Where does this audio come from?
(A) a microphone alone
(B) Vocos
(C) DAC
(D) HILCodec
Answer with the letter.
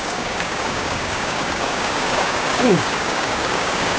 C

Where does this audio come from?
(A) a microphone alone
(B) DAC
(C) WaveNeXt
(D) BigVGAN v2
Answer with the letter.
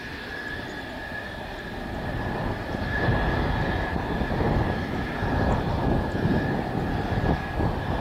A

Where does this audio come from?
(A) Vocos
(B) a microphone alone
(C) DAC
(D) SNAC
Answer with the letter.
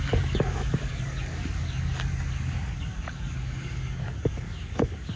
C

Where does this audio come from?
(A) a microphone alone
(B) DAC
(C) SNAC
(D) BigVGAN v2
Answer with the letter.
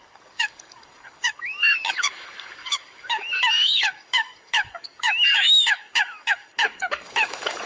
B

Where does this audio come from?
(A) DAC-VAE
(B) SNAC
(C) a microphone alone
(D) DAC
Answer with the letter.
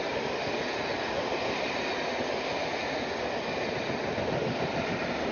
C